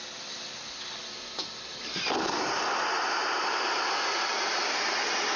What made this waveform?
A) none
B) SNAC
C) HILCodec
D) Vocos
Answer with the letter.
A